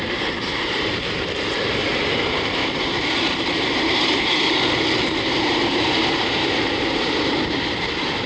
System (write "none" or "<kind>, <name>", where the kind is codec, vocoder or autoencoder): vocoder, BigVGAN v2